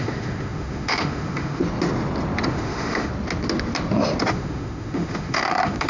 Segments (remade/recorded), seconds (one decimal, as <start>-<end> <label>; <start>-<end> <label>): 0.0-1.6 remade; 1.6-2.5 recorded; 2.5-3.1 remade; 3.1-4.3 recorded; 4.3-5.9 remade